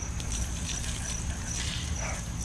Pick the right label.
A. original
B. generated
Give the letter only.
A